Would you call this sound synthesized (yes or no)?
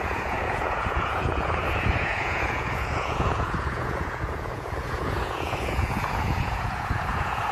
yes